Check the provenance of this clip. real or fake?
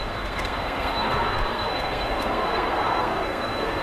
fake